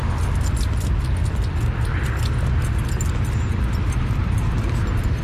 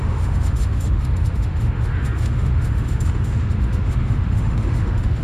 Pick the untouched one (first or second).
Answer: first